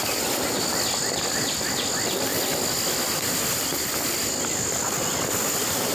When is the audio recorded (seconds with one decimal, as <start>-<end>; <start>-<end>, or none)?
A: 0.0-5.9